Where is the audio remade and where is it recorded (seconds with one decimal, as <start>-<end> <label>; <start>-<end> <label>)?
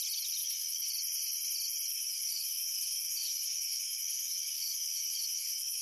0.0-0.4 recorded; 0.4-0.9 remade; 0.9-1.9 recorded; 1.9-5.8 remade